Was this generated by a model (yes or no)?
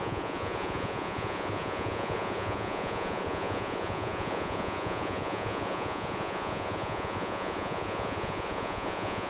yes